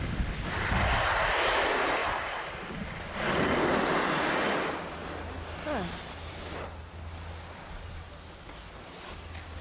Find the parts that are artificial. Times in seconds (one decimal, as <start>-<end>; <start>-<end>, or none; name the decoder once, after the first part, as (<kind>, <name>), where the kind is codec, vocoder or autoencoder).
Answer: none